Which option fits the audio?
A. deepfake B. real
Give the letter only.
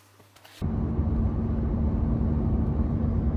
B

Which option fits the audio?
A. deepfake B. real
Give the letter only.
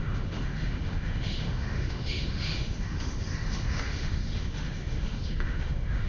A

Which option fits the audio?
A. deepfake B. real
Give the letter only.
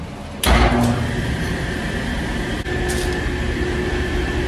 B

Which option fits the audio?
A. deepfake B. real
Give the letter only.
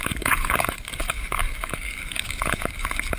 A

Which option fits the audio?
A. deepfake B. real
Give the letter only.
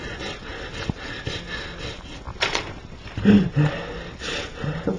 B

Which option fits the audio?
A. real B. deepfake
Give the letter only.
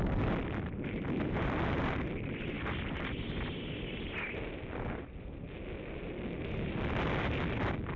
A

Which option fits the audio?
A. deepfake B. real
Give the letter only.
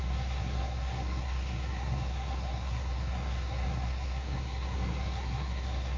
A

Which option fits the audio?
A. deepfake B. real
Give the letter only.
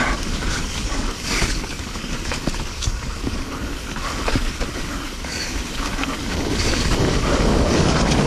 A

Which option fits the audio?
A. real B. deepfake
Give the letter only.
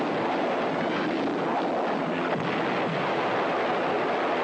A